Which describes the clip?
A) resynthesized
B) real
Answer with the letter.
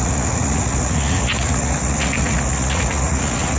A